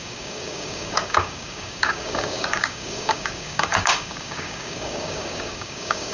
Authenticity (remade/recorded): remade